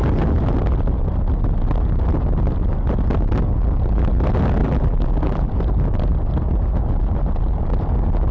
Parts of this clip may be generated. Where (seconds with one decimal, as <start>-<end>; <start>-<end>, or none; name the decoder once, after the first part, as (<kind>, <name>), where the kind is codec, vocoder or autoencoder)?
4.6-5.5 (vocoder, BigVGAN v2)